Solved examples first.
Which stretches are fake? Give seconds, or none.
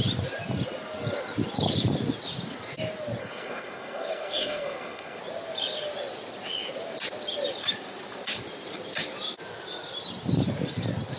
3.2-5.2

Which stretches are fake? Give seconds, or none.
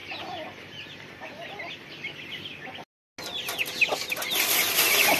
none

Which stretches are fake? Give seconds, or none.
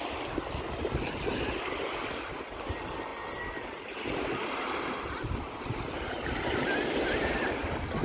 none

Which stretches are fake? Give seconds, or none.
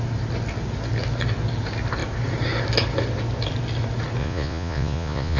4.2-5.4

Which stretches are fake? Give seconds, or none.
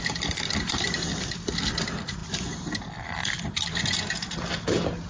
0.0-5.1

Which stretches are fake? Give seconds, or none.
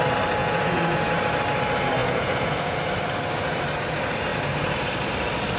0.4-1.1; 2.0-2.8